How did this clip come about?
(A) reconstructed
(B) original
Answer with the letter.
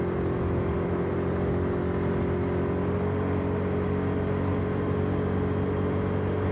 B